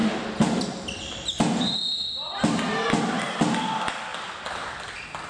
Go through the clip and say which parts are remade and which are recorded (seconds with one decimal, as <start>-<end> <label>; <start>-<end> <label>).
0.0-5.3 recorded